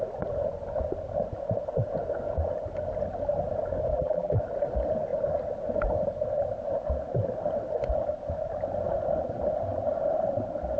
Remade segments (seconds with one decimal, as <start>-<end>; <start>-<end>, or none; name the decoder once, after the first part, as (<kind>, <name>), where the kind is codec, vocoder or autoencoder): 3.9-4.4 (vocoder, BigVGAN v2)